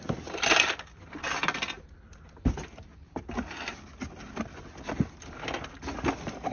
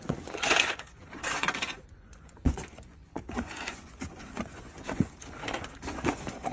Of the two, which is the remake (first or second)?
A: second